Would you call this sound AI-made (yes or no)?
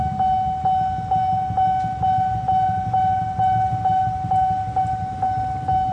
no